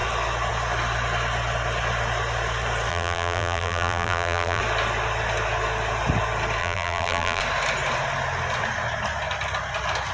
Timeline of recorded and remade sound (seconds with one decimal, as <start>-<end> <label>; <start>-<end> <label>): 0.0-2.9 recorded; 2.9-4.6 remade; 4.6-6.6 recorded; 6.6-7.4 remade; 7.4-10.1 recorded